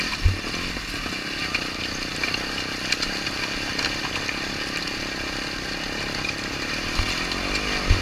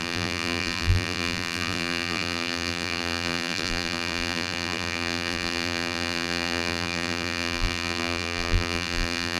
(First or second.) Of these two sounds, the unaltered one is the first